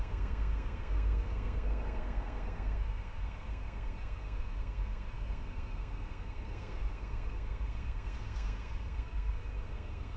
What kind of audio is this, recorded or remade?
remade